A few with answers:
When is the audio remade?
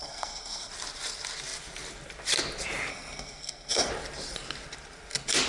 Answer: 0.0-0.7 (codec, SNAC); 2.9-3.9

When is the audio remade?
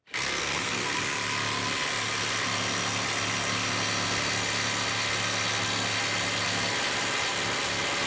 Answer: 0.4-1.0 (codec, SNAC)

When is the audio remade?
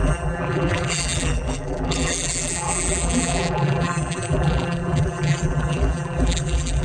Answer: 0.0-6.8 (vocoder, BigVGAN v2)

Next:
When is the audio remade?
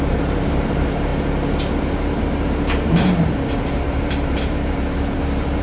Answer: 0.0-1.1 (vocoder, BigVGAN v2); 1.8-5.6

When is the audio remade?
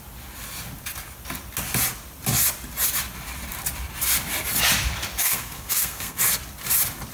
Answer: 5.2-6.2 (codec, SNAC)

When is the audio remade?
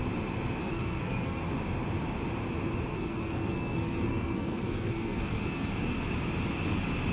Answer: 0.6-1.4 (codec, SNAC); 2.9-5.7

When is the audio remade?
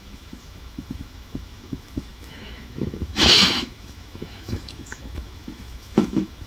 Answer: 0.0-6.5 (autoencoder, DAC-VAE)